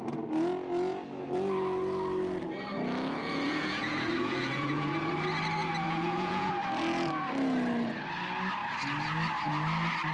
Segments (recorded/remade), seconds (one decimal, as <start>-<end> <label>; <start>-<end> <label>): 0.0-3.2 recorded; 3.2-5.1 remade; 5.1-5.6 recorded; 5.6-6.5 remade; 6.5-10.1 recorded